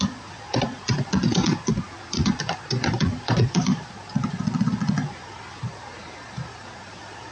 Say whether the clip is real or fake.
fake